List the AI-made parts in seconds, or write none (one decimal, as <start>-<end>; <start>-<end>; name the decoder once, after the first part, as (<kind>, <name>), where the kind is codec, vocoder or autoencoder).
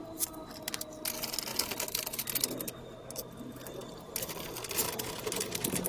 none